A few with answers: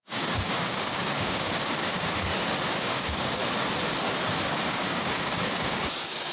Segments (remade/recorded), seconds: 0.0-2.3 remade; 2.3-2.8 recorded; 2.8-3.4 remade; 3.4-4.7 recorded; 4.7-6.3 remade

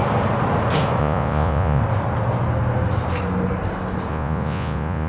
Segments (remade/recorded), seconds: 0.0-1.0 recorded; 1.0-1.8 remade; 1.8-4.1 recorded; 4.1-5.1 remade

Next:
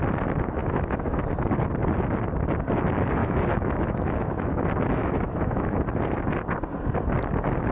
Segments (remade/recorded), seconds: 0.0-0.6 recorded; 0.6-1.2 remade; 1.2-3.2 recorded; 3.2-4.6 remade; 4.6-5.0 recorded; 5.0-5.8 remade; 5.8-7.7 recorded

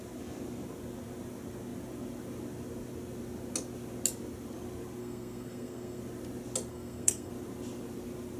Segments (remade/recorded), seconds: 0.0-5.0 recorded; 5.0-6.0 remade; 6.0-6.7 recorded; 6.7-7.3 remade; 7.3-8.4 recorded

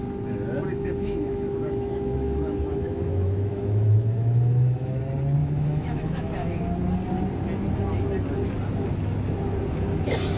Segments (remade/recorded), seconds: 0.0-0.7 recorded; 0.7-5.0 remade; 5.0-5.4 recorded; 5.4-6.6 remade; 6.6-10.4 recorded

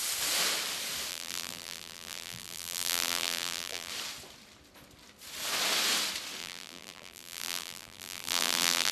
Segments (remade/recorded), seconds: 0.0-1.1 recorded; 1.1-3.9 remade; 3.9-6.4 recorded; 6.4-8.9 remade

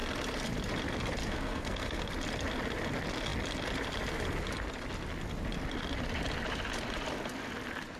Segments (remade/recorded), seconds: 0.0-1.2 recorded; 1.2-2.0 remade; 2.0-8.0 recorded